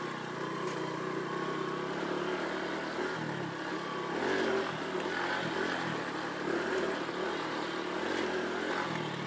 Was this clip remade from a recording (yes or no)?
no